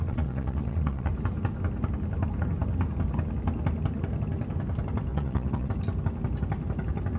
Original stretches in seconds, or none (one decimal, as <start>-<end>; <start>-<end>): 1.1-5.1; 5.7-7.2